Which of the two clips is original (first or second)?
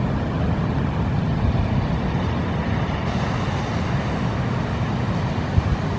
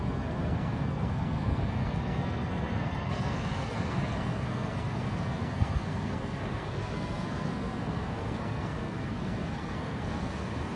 first